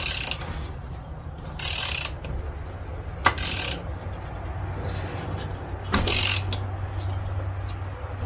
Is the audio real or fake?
real